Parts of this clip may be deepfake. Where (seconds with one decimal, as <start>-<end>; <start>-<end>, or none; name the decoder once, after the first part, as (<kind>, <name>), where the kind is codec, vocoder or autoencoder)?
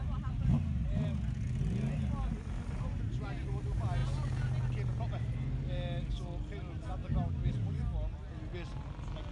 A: none